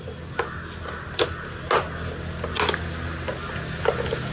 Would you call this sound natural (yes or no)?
yes